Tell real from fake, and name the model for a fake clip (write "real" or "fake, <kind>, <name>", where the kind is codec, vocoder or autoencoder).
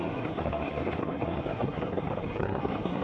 fake, codec, SNAC